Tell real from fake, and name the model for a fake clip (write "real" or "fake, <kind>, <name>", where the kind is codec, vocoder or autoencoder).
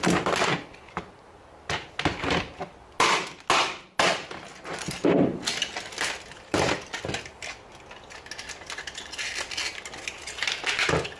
real